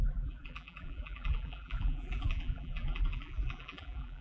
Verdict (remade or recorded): remade